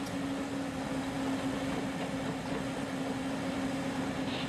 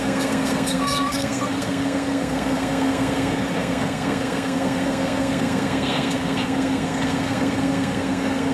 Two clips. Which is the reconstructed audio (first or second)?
second